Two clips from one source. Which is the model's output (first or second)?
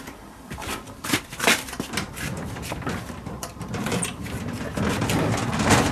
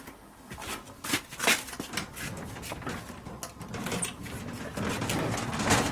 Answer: first